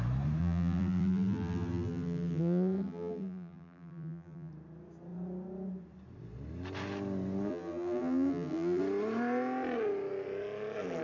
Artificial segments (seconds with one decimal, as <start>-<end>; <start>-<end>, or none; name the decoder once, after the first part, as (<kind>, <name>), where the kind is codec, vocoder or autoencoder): 0.4-4.5 (vocoder, BigVGAN v2); 7.5-8.8

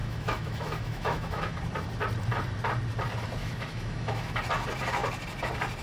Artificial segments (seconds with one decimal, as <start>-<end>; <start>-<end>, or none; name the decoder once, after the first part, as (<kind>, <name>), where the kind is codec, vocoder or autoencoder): 0.0-1.6 (autoencoder, DAC-VAE); 3.4-4.4

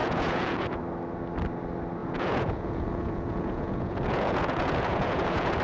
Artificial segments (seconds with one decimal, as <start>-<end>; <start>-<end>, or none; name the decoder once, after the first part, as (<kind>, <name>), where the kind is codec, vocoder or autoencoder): 0.0-0.8 (vocoder, Vocos); 2.0-5.6

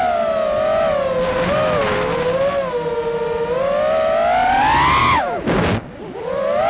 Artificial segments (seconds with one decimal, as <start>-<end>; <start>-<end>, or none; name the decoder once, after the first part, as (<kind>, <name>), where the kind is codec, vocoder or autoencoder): 5.0-6.2 (codec, DAC)

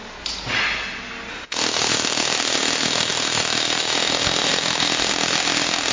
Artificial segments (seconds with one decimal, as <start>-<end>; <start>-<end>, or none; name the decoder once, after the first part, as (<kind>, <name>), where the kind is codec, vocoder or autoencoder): 1.3-5.9 (autoencoder, DAC-VAE)

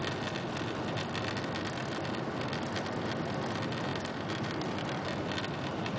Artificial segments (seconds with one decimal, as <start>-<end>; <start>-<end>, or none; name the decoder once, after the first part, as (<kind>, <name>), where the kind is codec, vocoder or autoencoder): 1.8-2.5 (vocoder, BigVGAN v2); 3.9-6.0

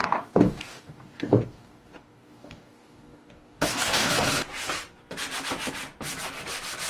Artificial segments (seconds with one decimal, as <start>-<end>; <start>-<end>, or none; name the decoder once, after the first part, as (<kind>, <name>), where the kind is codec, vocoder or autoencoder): 0.0-4.1 (codec, DAC)